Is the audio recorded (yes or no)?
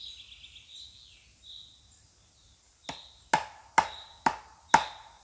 yes